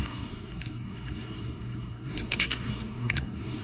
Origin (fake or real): fake